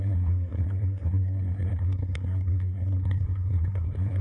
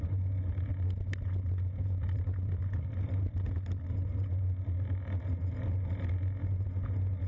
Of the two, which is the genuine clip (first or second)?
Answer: second